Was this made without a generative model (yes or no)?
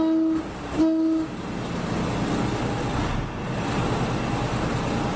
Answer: yes